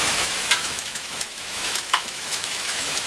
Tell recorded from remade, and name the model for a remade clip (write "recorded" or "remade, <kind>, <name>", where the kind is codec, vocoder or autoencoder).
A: remade, autoencoder, DAC-VAE